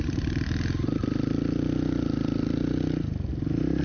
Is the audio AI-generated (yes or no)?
no